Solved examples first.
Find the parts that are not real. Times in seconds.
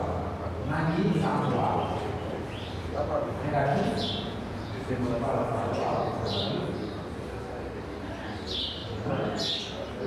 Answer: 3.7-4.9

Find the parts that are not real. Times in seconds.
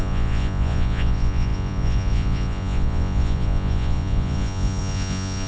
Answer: 0.0-5.5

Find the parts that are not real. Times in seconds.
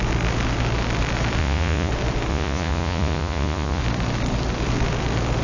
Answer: 1.4-1.9; 2.3-3.8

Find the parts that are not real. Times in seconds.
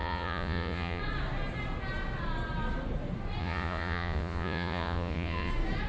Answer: 0.0-1.0; 3.4-5.5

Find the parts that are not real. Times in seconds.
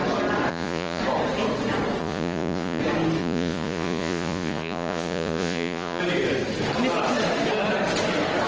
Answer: 0.5-1.0; 2.0-2.8; 3.2-6.0